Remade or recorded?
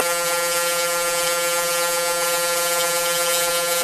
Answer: remade